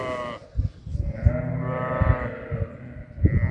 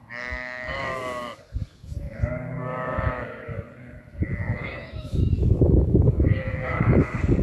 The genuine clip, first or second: first